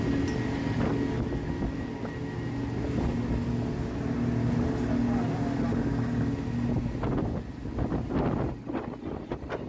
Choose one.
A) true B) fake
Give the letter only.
A